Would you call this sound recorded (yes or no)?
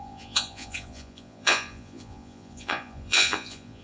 no